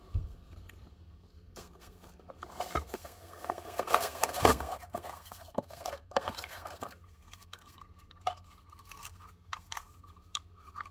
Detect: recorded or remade remade